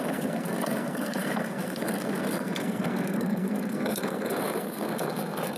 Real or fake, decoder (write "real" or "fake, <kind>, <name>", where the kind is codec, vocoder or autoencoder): fake, codec, SNAC